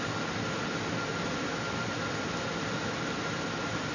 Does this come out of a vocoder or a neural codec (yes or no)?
no